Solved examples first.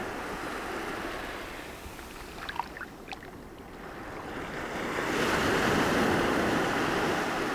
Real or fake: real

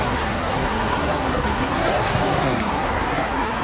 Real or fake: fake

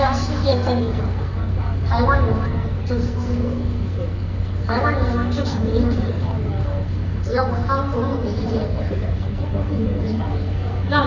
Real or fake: fake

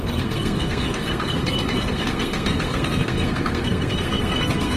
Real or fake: fake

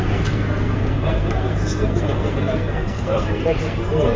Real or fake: fake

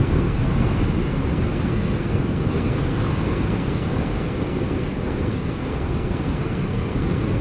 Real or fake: fake